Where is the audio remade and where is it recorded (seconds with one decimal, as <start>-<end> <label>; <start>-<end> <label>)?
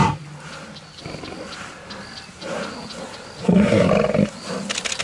0.0-3.4 recorded; 3.4-3.9 remade; 3.9-5.0 recorded